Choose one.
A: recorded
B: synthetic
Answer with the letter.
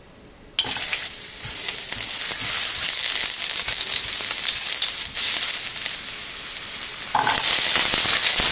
A